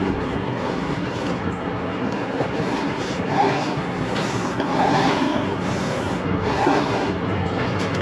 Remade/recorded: remade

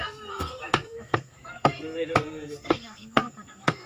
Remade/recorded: remade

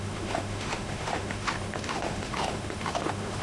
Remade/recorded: remade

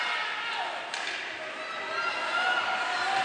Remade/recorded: recorded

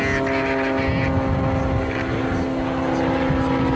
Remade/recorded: recorded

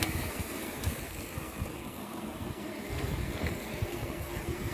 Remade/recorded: remade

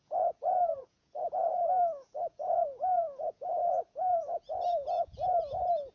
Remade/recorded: remade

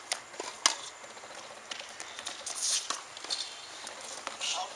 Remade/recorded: recorded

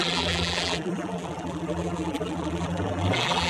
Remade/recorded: remade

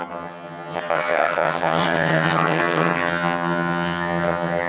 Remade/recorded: remade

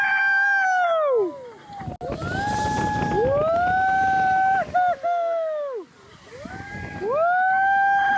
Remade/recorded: recorded